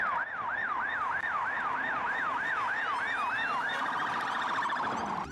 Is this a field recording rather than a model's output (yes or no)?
yes